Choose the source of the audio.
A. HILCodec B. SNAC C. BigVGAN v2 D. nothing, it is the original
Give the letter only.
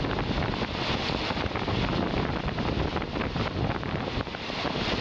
D